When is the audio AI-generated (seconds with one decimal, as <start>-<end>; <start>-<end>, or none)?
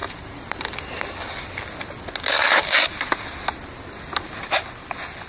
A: 0.0-1.6; 2.3-3.1